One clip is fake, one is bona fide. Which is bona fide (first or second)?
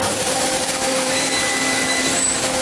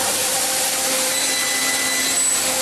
second